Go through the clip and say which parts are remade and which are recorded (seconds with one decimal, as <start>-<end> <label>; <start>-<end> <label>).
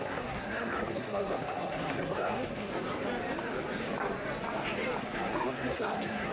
0.0-2.7 remade; 2.7-5.0 recorded; 5.0-6.3 remade